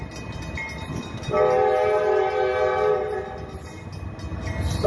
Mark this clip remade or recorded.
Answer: recorded